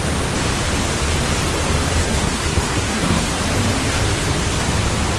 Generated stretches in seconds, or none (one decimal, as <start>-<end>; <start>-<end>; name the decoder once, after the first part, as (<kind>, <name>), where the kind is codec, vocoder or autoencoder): 2.0-3.4 (codec, SNAC)